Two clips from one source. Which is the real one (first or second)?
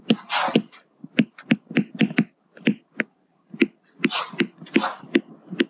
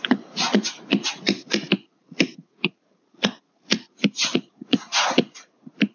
first